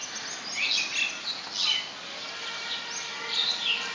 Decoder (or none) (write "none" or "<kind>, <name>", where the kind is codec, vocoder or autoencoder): none